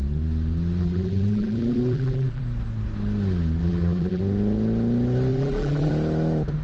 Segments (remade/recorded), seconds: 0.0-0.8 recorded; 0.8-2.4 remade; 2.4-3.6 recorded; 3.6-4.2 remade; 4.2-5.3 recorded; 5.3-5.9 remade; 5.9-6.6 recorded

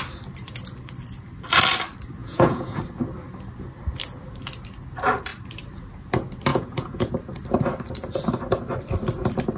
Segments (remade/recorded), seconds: 0.0-2.2 recorded; 2.2-2.8 remade; 2.8-6.5 recorded; 6.5-7.1 remade; 7.1-9.6 recorded

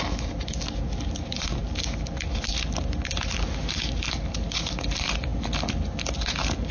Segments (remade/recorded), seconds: 0.0-6.7 recorded

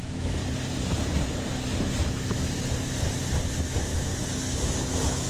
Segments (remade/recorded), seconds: 0.0-0.4 remade; 0.4-3.6 recorded; 3.6-4.1 remade; 4.1-4.8 recorded; 4.8-5.3 remade